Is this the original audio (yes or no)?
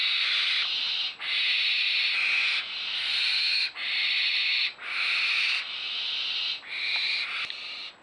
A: yes